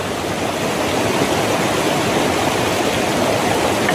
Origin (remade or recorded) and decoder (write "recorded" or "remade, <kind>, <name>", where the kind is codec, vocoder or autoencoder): recorded